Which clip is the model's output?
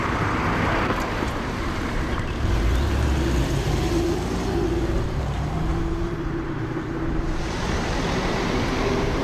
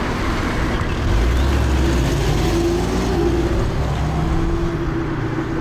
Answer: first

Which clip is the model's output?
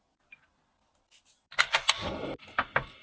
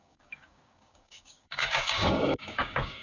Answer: second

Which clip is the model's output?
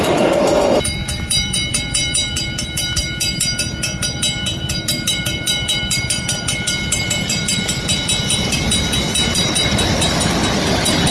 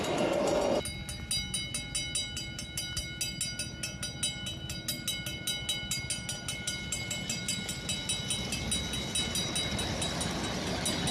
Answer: first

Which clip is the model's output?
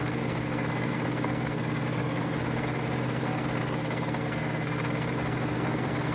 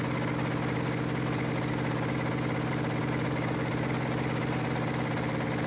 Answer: first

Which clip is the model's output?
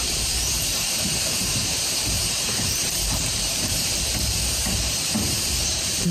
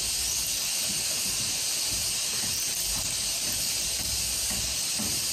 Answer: first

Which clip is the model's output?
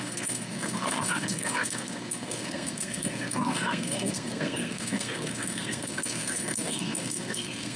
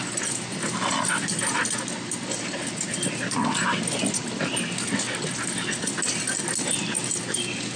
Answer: first